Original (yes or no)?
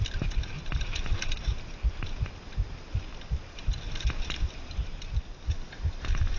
yes